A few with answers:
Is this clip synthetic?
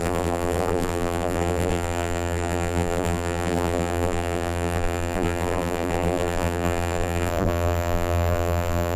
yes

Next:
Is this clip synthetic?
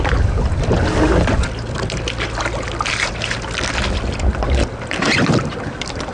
no